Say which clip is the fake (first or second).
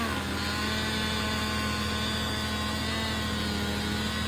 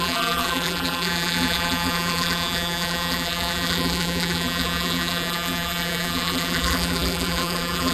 second